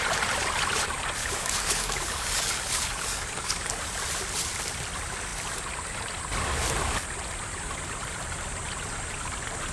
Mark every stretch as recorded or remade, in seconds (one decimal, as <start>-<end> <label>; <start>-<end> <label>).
0.0-1.2 recorded; 1.2-3.9 remade; 3.9-9.7 recorded